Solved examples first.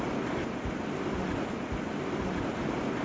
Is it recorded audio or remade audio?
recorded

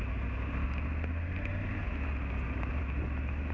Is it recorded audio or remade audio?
recorded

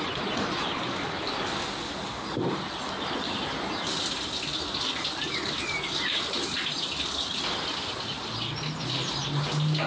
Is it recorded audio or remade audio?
recorded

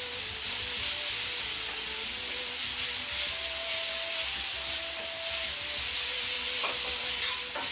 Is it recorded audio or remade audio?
recorded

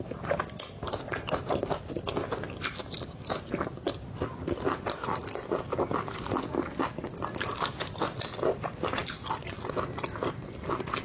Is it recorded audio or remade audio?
recorded